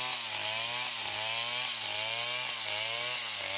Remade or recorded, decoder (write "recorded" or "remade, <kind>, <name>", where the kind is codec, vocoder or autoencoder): recorded